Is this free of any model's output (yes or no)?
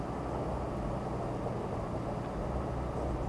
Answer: yes